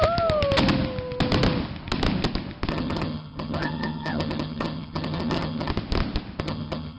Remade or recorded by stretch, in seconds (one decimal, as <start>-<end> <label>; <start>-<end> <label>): 0.0-2.7 recorded; 2.7-5.7 remade; 5.7-6.4 recorded; 6.4-7.0 remade